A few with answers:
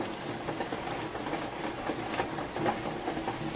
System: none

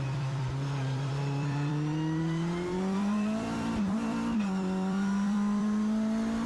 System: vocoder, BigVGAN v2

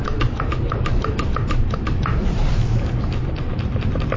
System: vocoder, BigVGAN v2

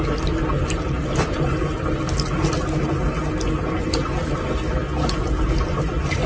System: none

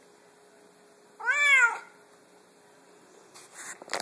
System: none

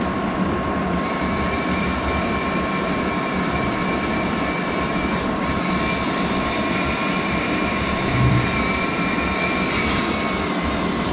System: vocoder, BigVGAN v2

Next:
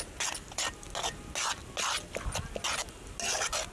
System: none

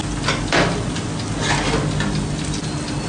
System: none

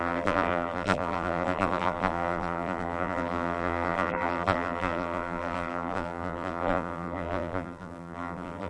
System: vocoder, BigVGAN v2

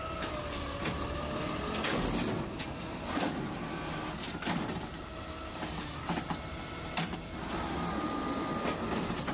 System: none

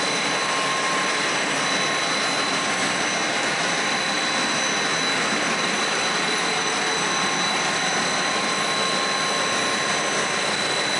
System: none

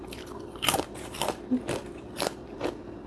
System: vocoder, BigVGAN v2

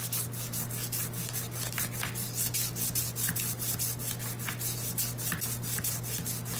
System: none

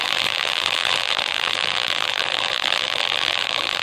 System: vocoder, BigVGAN v2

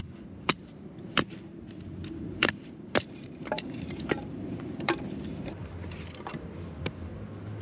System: vocoder, BigVGAN v2